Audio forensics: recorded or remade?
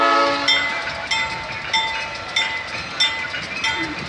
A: recorded